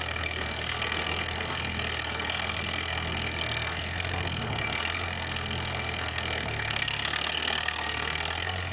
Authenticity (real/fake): fake